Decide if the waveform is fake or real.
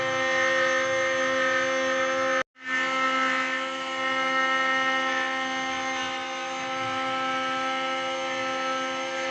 real